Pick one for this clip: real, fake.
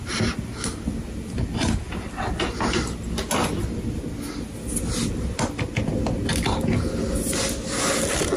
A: real